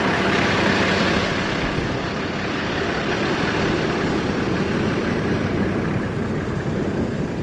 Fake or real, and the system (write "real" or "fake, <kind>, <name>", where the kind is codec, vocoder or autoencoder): real